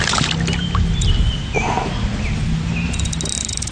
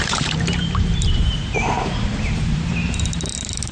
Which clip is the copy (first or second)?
second